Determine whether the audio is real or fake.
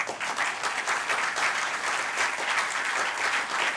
real